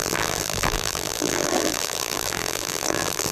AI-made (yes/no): yes